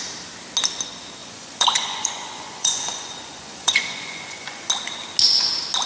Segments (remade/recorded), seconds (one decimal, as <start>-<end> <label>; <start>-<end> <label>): 0.0-1.2 recorded; 1.2-4.7 remade; 4.7-5.9 recorded